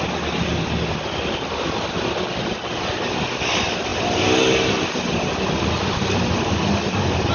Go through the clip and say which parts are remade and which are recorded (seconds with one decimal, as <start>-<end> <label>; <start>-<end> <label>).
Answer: 0.0-7.3 recorded